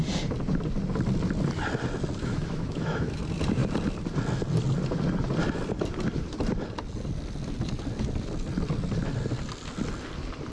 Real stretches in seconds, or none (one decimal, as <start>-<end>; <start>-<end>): 0.0-2.2; 3.2-10.5